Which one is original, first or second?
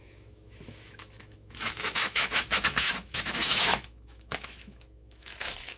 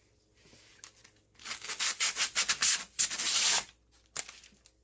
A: second